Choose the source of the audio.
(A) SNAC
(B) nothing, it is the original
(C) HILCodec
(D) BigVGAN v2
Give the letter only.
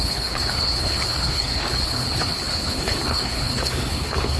C